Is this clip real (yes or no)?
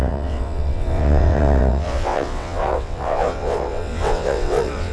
no